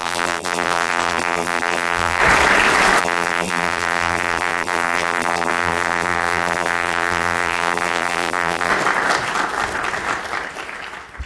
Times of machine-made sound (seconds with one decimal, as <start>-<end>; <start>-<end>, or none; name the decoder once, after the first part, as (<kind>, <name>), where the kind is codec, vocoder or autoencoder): 0.0-2.2 (vocoder, BigVGAN v2); 3.0-8.7